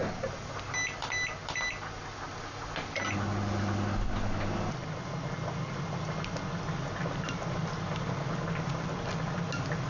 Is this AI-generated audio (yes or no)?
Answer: no